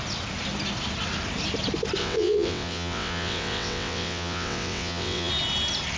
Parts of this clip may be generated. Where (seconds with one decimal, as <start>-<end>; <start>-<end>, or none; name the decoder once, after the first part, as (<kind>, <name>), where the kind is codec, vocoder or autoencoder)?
2.0-5.3 (vocoder, WaveNeXt)